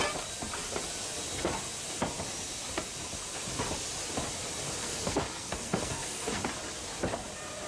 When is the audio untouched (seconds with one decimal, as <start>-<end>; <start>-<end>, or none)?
0.0-4.8; 6.4-7.7